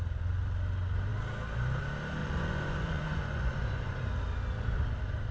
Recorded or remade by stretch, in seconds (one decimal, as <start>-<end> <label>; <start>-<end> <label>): 0.0-2.2 recorded; 2.2-4.0 remade; 4.0-5.3 recorded